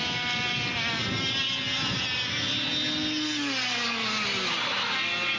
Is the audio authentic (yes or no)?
yes